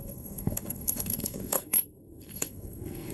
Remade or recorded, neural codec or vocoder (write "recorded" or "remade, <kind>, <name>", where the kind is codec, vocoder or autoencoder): remade, codec, SNAC